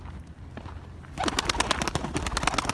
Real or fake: real